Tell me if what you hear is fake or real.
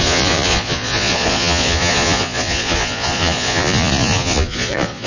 fake